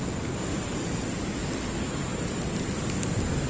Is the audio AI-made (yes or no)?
no